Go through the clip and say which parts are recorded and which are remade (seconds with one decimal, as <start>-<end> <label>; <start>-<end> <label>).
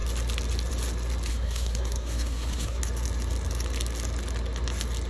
0.0-1.3 recorded; 1.3-2.8 remade; 2.8-5.1 recorded